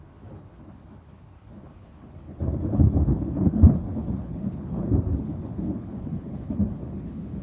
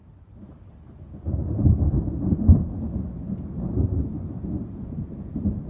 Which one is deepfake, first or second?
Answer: first